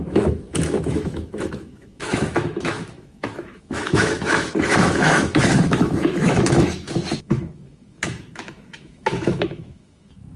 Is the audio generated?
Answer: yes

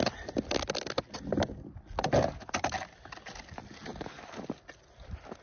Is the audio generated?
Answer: no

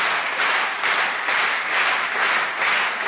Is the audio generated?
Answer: no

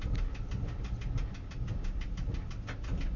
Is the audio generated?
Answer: no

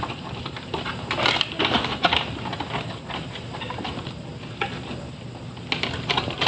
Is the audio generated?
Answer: no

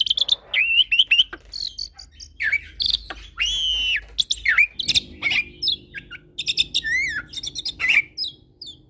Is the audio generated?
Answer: no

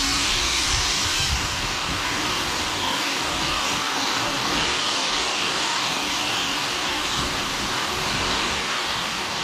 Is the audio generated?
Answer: yes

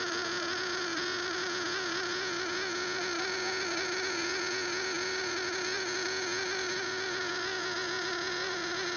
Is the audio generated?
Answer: yes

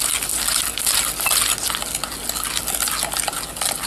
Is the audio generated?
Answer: no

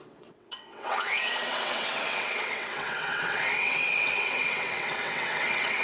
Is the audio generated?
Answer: yes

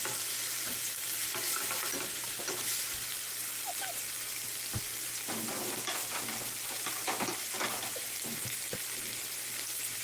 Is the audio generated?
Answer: no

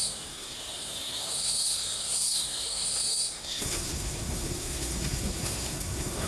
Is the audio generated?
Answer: yes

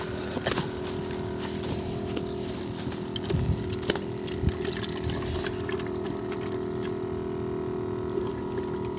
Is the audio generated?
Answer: no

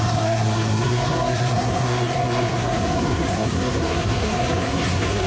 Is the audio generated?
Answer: yes